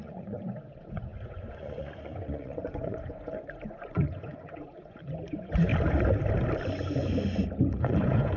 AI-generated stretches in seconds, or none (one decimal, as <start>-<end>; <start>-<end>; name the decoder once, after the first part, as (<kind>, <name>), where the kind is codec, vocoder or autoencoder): 0.0-5.7 (vocoder, Vocos); 7.8-8.4